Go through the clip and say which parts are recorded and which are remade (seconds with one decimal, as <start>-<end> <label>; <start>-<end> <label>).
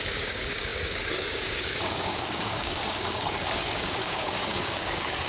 0.0-5.3 remade